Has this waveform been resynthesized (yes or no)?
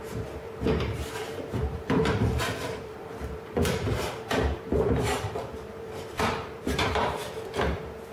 yes